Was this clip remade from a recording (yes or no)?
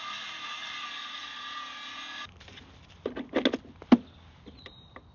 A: no